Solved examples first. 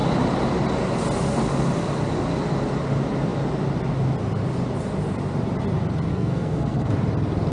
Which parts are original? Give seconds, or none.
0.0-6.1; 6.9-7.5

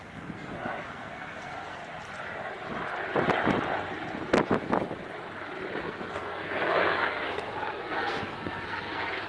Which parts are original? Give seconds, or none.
1.8-5.8

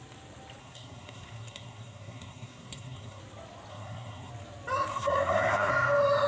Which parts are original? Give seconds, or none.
0.0-0.6; 3.2-3.7; 4.3-4.9; 5.7-6.3

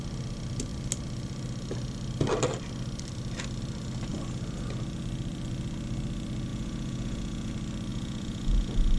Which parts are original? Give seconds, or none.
0.0-6.5; 7.5-7.9